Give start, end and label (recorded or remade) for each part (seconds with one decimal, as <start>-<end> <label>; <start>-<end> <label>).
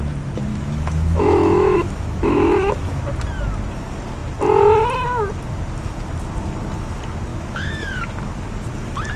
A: 0.0-0.5 recorded; 0.5-3.0 remade; 3.0-7.3 recorded; 7.3-8.0 remade; 8.0-9.2 recorded